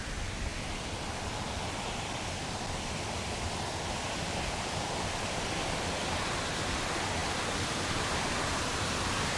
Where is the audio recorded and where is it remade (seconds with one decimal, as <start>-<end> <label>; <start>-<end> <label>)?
0.0-0.5 recorded; 0.5-5.4 remade; 5.4-7.2 recorded; 7.2-8.7 remade; 8.7-9.4 recorded